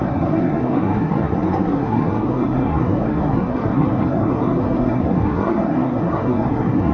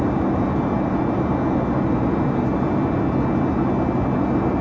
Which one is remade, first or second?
first